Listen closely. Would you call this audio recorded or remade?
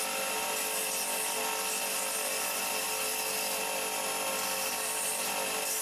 recorded